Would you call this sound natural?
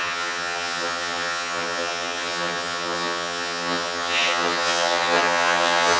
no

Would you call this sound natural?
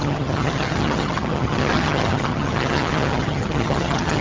no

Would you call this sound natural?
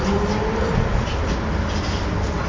yes